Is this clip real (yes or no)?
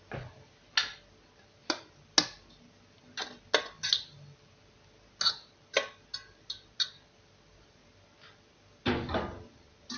yes